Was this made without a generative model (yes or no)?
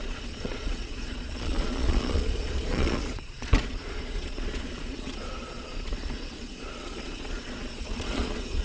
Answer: no